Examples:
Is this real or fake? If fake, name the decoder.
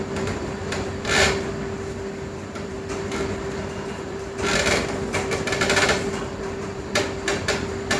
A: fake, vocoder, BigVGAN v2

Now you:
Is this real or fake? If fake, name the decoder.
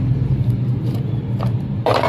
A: fake, vocoder, BigVGAN v2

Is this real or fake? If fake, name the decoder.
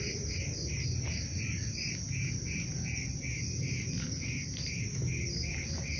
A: real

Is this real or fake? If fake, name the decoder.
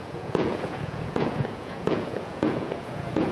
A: fake, vocoder, Vocos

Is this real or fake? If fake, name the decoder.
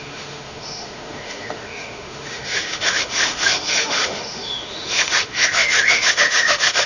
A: fake, autoencoder, DAC-VAE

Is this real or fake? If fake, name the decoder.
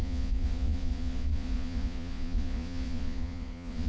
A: fake, vocoder, Vocos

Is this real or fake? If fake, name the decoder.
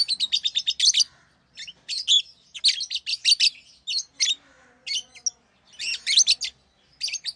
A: real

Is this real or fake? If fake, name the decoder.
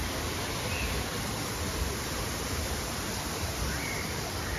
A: fake, vocoder, BigVGAN v2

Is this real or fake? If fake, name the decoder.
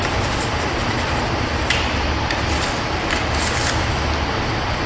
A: real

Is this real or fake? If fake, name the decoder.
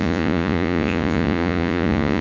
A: fake, vocoder, Vocos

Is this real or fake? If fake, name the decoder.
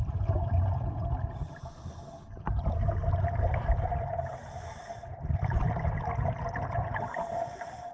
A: real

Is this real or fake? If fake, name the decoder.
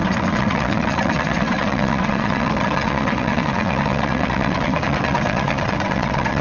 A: fake, vocoder, WaveNeXt